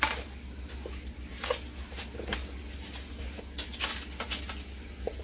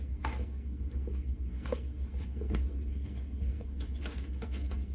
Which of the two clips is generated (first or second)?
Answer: second